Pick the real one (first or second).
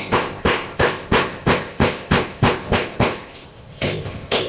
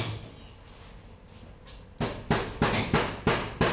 second